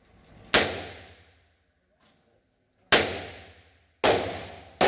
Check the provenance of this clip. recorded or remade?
recorded